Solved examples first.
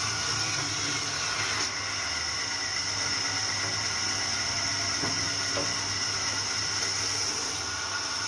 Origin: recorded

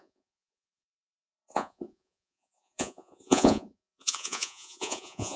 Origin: remade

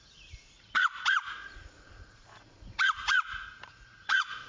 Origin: remade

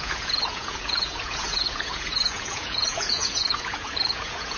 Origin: remade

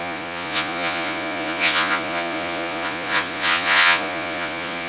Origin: remade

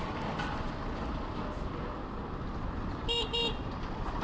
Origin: recorded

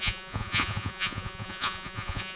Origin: remade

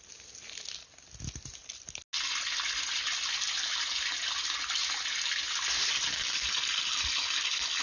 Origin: recorded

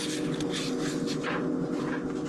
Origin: recorded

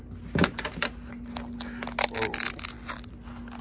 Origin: recorded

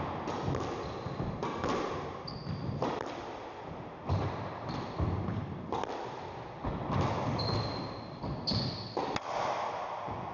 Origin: recorded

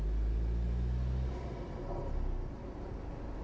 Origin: recorded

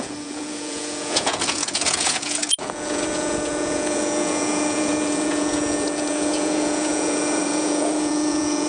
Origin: remade